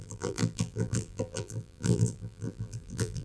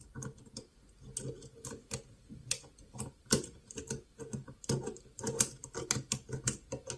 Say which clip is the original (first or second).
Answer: second